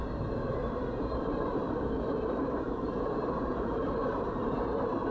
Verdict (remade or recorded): remade